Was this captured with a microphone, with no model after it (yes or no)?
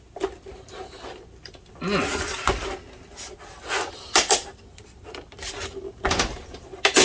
yes